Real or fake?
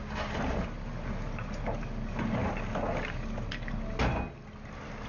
real